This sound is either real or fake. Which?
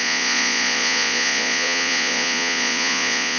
fake